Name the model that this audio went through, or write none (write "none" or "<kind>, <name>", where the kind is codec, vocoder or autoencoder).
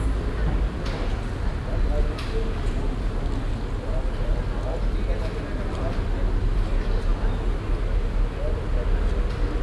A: none